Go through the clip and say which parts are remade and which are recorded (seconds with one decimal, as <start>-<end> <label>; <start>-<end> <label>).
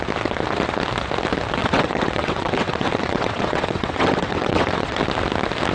0.0-1.6 recorded; 1.6-5.0 remade; 5.0-5.7 recorded